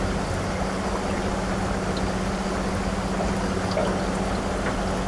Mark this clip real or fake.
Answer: real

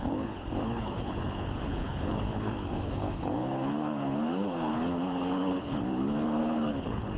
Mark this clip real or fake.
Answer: fake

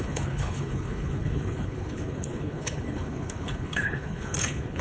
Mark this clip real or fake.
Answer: fake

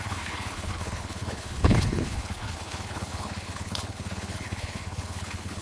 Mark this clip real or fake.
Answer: fake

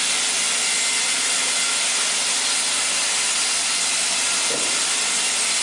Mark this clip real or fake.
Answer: real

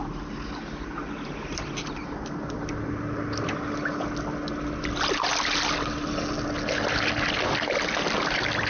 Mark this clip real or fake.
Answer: real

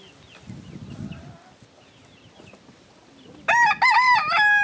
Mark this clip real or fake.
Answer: real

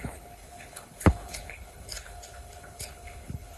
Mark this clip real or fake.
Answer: fake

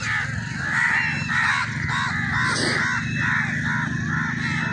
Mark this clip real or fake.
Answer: real